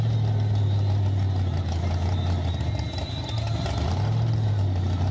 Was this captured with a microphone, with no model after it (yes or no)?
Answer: yes